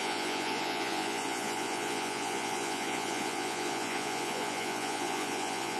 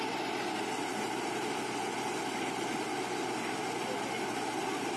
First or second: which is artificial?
first